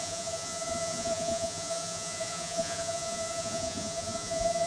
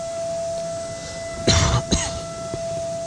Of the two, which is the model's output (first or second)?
first